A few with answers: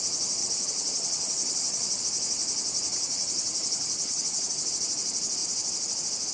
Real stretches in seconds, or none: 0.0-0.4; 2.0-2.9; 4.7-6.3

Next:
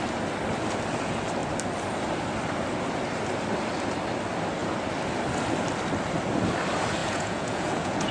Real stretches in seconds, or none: 0.0-7.0

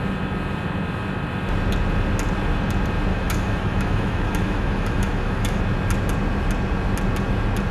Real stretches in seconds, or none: 0.0-3.1; 5.6-7.7

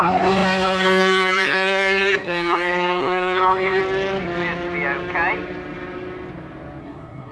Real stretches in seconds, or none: 3.8-6.8

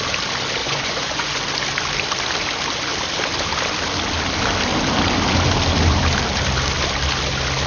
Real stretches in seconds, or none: 0.0-0.6; 1.4-7.7

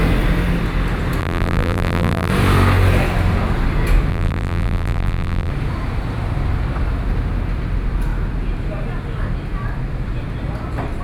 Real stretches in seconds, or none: 0.0-1.2; 2.3-4.1; 5.5-11.0

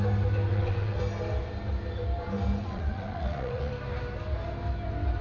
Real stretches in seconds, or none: 0.0-0.5; 1.0-2.6; 3.7-5.2

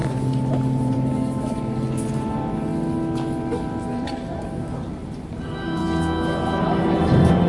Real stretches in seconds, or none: 0.0-0.5; 2.7-4.0; 5.8-6.6